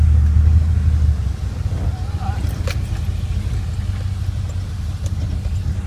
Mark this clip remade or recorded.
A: recorded